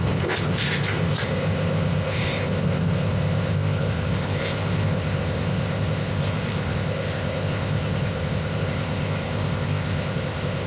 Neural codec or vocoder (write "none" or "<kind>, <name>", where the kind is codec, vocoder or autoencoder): codec, ZipCodec